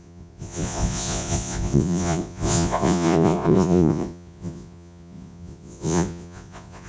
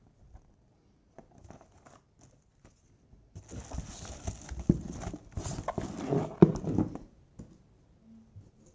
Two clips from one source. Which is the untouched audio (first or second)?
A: second